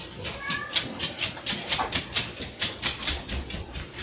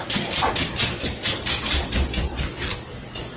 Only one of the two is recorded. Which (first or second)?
second